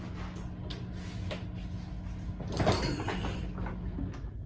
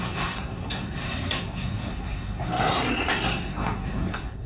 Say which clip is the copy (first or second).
second